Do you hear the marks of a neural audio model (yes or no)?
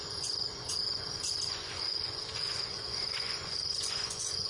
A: yes